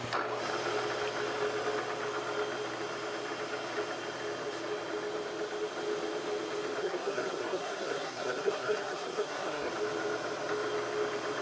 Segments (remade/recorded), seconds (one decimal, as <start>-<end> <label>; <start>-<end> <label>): 0.0-6.8 recorded; 6.8-9.7 remade; 9.7-11.4 recorded